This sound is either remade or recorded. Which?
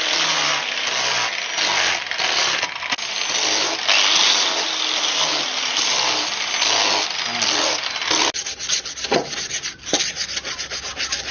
recorded